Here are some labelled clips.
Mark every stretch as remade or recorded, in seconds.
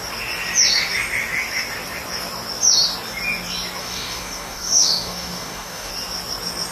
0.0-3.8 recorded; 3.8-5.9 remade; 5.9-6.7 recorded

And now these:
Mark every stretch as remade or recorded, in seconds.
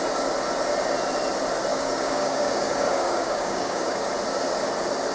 0.0-1.7 recorded; 1.7-4.1 remade; 4.1-5.1 recorded